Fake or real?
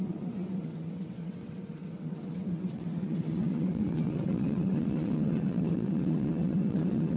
fake